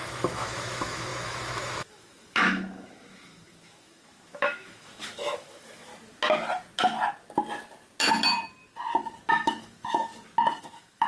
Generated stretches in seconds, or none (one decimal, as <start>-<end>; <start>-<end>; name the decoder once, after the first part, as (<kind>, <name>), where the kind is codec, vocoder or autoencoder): 0.0-5.9 (autoencoder, DAC-VAE); 9.3-10.1; 10.6-11.1